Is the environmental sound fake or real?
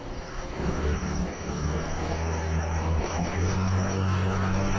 fake